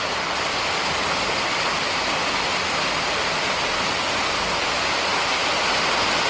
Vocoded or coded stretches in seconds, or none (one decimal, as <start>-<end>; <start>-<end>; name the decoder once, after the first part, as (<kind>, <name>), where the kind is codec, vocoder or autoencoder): none